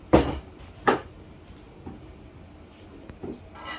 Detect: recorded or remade recorded